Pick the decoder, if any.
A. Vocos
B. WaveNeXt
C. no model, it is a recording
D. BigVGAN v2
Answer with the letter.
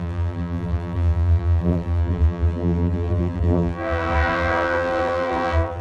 D